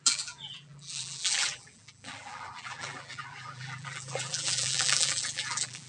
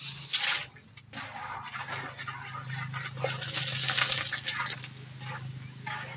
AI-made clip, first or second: first